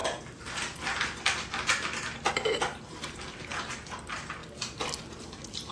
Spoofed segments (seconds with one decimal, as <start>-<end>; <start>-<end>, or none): none